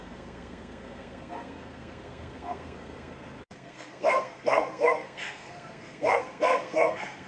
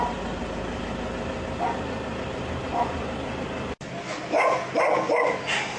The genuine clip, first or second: second